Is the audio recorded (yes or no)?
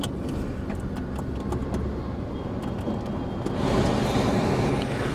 yes